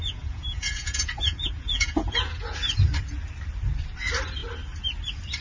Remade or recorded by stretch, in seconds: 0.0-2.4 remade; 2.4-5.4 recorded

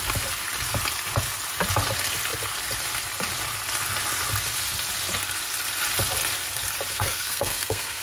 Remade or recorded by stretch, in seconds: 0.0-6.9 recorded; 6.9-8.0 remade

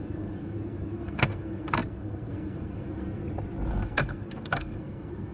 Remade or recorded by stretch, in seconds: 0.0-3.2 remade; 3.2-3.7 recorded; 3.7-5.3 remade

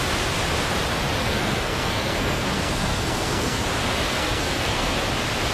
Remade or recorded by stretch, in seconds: 0.0-1.2 recorded; 1.2-3.6 remade; 3.6-4.1 recorded; 4.1-5.0 remade; 5.0-5.5 recorded

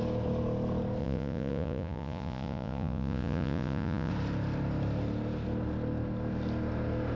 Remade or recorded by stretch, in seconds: 0.0-1.0 recorded; 1.0-4.1 remade; 4.1-7.2 recorded

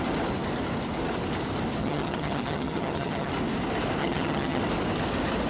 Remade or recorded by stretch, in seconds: 0.0-1.8 recorded; 1.8-3.3 remade; 3.3-4.0 recorded; 4.0-4.6 remade; 4.6-5.5 recorded

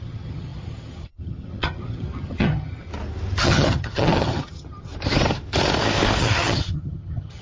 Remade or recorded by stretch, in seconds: 0.0-2.9 remade; 2.9-3.4 recorded; 3.4-4.9 remade; 4.9-6.2 recorded; 6.2-7.4 remade

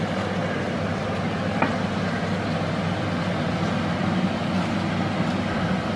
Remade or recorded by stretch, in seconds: 0.0-6.0 recorded